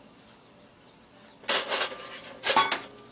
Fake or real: real